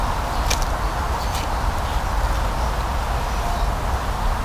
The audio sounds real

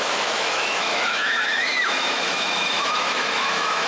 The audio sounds fake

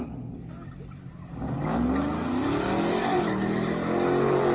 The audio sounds real